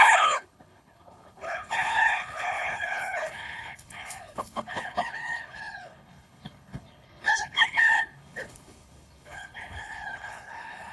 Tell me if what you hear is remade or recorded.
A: remade